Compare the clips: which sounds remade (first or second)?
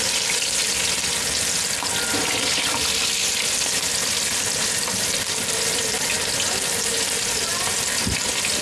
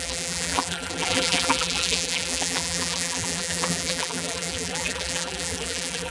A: second